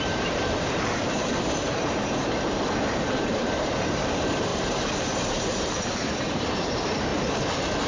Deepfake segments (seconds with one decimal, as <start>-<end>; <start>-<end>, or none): 0.0-7.1